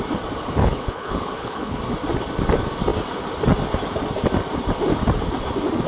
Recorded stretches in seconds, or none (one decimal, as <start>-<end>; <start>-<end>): 0.0-0.6; 1.8-5.9